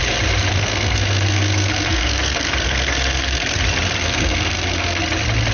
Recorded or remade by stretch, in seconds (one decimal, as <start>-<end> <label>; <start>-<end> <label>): 0.0-0.5 recorded; 0.5-3.6 remade; 3.6-4.0 recorded; 4.0-5.0 remade; 5.0-5.5 recorded